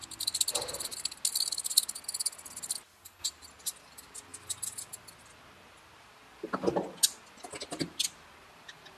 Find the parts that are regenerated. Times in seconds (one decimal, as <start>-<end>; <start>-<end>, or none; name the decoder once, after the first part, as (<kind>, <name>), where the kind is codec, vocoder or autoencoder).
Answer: none